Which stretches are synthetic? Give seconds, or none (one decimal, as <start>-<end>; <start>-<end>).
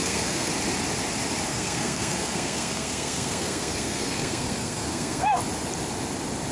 0.0-0.5; 1.5-5.4